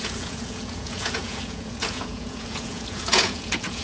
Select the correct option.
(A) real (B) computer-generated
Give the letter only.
B